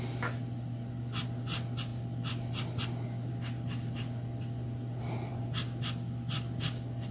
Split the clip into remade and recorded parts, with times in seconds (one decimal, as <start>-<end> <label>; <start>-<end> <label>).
0.0-7.1 recorded